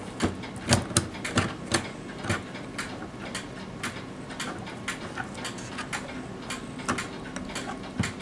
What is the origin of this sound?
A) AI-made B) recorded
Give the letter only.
B